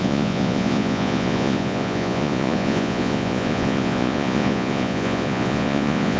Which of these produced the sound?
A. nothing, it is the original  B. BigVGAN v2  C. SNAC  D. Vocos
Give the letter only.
D